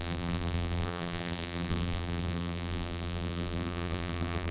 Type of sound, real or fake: fake